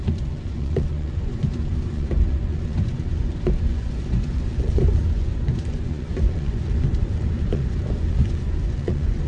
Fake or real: fake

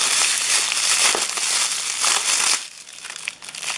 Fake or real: real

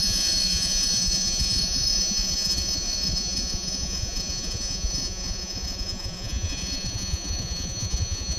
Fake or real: fake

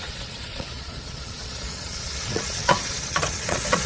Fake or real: fake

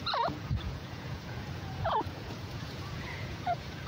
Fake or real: fake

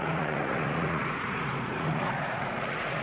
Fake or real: fake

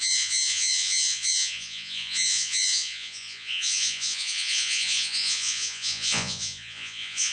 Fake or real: fake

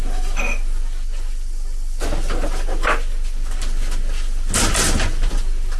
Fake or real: real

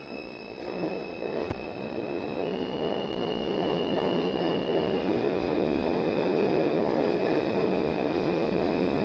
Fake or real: fake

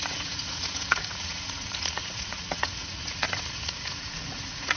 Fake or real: fake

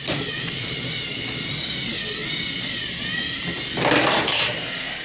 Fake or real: real